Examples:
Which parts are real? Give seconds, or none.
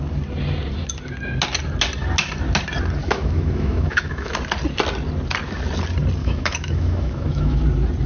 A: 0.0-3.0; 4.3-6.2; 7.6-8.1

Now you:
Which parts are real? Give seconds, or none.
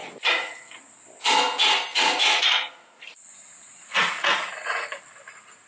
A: 0.8-1.9; 5.1-5.7